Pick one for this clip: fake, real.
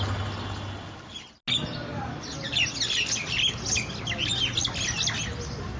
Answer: real